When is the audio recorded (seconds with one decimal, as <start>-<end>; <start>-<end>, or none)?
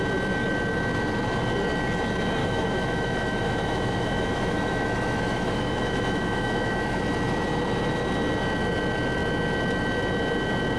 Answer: 0.0-2.4; 7.0-10.8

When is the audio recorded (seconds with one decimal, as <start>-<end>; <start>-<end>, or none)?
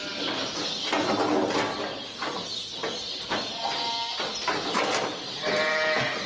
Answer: 0.0-6.3